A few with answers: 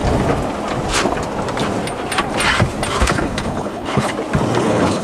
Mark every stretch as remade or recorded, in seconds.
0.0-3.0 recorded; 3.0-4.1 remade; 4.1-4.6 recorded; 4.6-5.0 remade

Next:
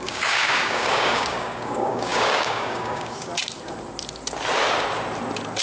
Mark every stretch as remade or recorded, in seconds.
0.0-3.3 remade; 3.3-5.6 recorded

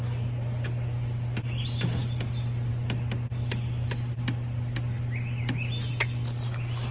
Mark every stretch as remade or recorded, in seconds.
0.0-6.9 recorded

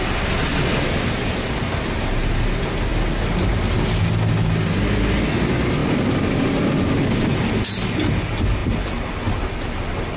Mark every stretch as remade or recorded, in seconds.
0.0-10.2 recorded